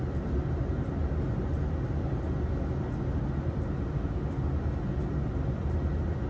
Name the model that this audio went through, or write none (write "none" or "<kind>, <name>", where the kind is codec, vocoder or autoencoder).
none